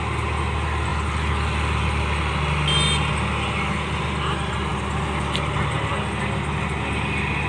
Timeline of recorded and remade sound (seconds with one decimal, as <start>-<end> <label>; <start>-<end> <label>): 0.0-7.5 recorded